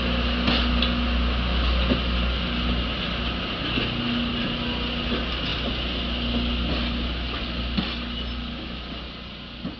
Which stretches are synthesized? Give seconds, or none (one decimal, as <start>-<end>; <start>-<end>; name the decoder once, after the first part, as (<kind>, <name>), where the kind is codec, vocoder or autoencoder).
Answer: none